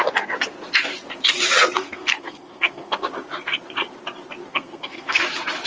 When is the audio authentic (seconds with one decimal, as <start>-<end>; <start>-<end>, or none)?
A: 0.0-1.8; 3.1-4.5; 5.2-5.7